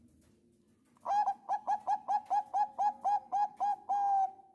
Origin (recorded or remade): recorded